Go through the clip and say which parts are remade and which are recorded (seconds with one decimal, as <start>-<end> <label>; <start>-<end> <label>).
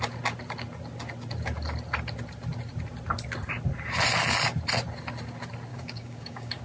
0.0-5.7 recorded; 5.7-6.6 remade